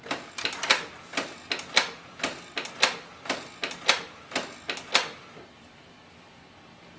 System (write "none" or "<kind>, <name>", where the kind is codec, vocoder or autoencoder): none